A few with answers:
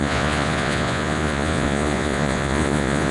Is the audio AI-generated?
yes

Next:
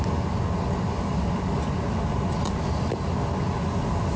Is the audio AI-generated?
no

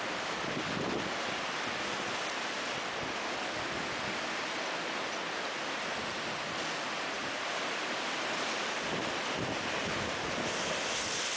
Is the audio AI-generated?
no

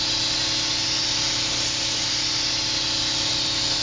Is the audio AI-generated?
no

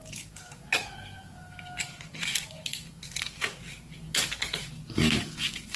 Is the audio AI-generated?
yes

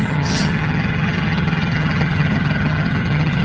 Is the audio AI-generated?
yes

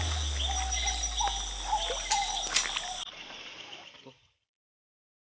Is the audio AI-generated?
no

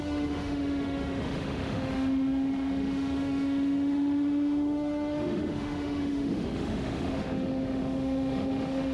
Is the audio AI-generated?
yes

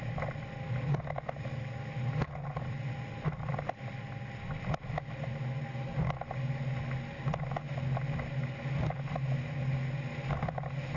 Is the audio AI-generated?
no